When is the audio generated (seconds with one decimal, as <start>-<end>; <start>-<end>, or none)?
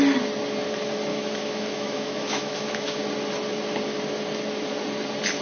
1.1-3.0